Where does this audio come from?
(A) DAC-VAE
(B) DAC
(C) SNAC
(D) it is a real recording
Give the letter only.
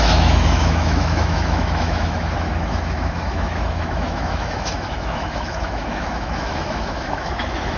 A